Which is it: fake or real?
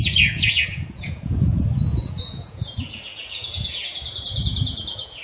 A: fake